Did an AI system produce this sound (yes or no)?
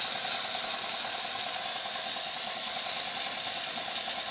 no